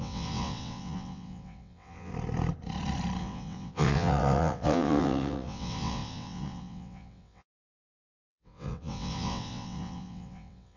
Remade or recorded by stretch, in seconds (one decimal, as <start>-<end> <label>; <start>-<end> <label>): 0.0-2.1 remade; 2.1-3.2 recorded; 3.2-10.8 remade